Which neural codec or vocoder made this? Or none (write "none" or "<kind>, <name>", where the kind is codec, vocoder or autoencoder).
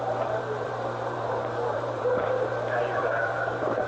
vocoder, BigVGAN v2